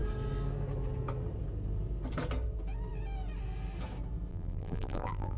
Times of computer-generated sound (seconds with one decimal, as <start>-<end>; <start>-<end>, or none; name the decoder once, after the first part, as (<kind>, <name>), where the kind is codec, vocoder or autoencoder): 4.3-5.4 (vocoder, BigVGAN v2)